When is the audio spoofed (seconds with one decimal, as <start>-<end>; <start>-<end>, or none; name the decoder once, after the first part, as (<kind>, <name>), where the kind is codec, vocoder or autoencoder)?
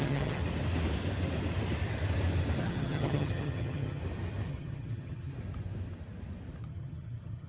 0.0-0.4 (vocoder, HiFi-GAN); 2.6-4.0; 4.5-5.3; 6.6-7.5